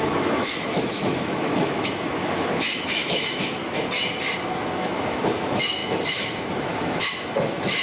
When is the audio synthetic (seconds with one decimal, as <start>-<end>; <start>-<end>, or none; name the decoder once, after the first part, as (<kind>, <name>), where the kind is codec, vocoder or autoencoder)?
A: 0.0-3.6 (autoencoder, DAC-VAE); 4.5-7.8